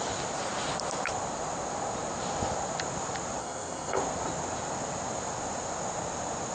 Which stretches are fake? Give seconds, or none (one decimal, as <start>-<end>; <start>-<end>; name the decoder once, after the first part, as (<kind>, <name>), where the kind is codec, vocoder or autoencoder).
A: 3.4-4.0 (codec, SNAC)